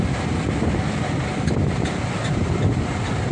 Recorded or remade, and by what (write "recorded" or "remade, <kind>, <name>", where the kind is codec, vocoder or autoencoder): recorded